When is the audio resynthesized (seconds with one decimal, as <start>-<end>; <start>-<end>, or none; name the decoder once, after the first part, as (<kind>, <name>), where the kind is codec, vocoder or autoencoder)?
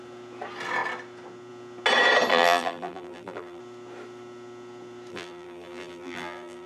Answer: 2.3-3.6 (vocoder, BigVGAN v2); 5.1-6.7